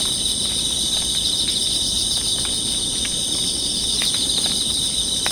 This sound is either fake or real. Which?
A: real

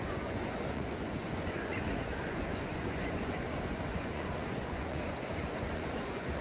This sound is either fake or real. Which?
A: fake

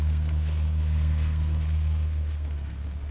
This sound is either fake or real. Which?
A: fake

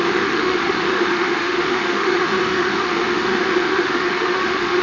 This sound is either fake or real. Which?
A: fake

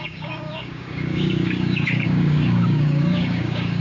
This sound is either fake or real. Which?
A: fake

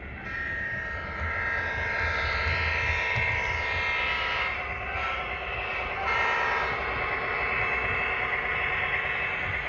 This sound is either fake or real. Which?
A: real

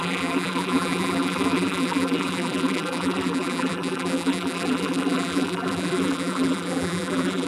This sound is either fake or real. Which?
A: fake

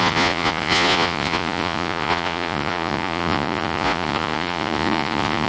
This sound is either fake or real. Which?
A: fake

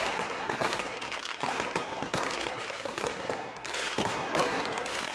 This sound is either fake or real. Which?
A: fake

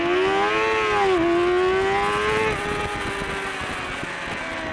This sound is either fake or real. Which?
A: real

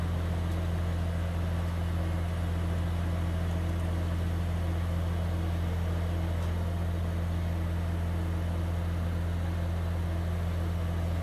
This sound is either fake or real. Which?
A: real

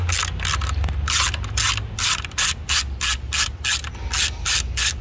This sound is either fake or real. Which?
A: real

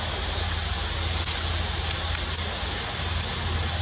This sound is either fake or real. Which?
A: real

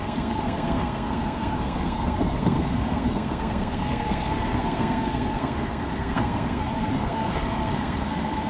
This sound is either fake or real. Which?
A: fake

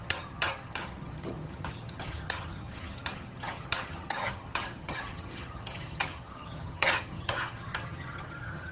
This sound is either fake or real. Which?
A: fake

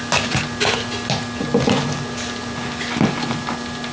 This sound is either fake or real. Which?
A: real